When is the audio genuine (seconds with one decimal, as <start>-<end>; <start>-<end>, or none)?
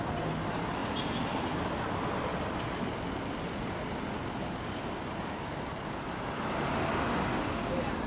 0.0-8.1